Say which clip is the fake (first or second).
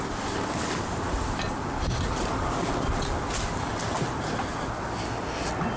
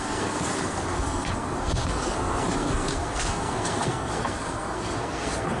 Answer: second